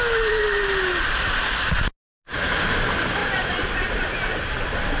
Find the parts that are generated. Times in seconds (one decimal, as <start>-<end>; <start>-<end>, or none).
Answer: none